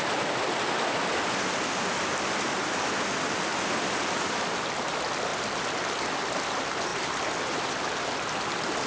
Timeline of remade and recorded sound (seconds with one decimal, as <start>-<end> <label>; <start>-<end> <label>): 0.0-3.5 recorded; 3.5-4.0 remade; 4.0-5.3 recorded; 5.3-5.9 remade; 5.9-8.9 recorded